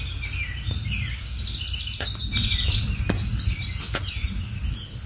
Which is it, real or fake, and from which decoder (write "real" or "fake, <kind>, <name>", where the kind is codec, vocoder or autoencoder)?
real